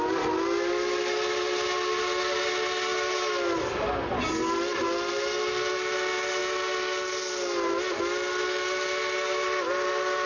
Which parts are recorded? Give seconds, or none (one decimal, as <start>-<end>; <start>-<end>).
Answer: 0.0-10.3